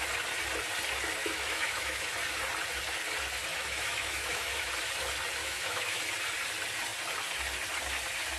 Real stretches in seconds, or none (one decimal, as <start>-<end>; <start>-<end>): 0.0-1.2; 2.1-3.5; 4.7-5.4; 6.0-8.4